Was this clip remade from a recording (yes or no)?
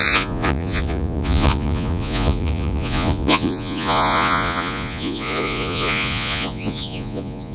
yes